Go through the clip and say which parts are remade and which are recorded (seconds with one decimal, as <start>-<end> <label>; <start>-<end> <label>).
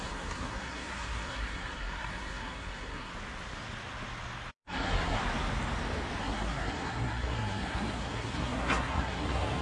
0.0-3.1 remade; 3.1-4.5 recorded; 4.5-5.2 remade; 5.2-6.2 recorded; 6.2-9.6 remade